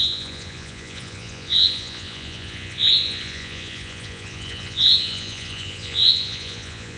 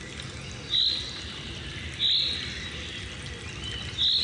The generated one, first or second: first